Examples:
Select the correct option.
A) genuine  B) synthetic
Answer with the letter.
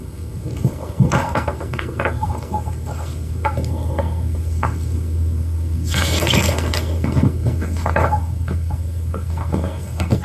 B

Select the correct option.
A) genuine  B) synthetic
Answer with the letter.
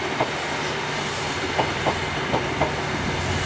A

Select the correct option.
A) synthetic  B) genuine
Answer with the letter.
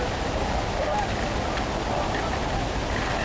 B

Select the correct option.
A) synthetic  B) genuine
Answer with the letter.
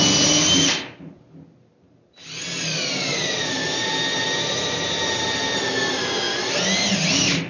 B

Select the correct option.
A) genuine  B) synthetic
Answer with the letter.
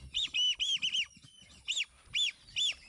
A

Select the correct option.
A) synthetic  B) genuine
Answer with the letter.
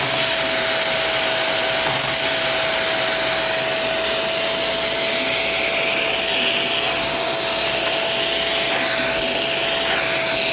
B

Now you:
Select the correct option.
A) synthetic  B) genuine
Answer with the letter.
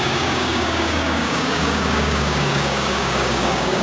A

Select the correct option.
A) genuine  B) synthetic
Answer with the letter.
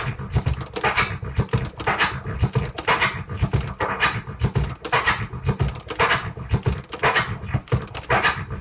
A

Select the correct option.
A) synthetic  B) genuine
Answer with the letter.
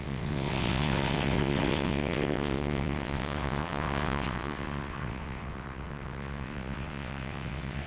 A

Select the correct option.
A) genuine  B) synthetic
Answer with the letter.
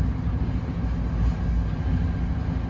A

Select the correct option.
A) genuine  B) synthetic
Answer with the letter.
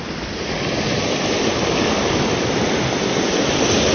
A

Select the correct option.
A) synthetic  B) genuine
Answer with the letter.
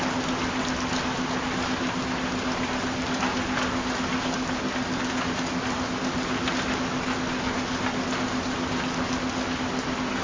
B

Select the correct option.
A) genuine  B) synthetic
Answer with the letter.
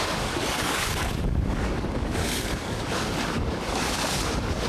B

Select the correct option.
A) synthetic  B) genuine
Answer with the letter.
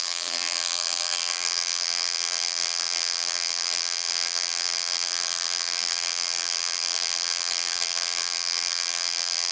A